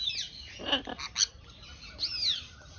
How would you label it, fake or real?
real